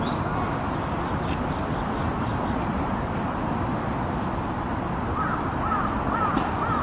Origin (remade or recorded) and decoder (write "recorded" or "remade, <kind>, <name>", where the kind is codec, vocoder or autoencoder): remade, vocoder, BigVGAN v2